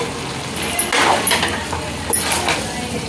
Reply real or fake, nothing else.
real